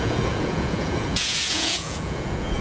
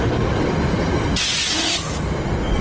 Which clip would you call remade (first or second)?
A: first